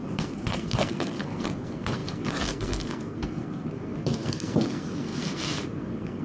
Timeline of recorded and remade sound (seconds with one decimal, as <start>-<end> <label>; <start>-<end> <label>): 0.0-6.2 remade